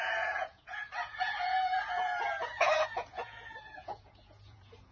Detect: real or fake fake